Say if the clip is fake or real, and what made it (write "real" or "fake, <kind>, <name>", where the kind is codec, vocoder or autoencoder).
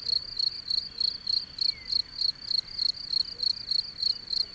real